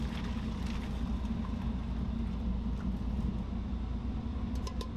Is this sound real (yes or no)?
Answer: yes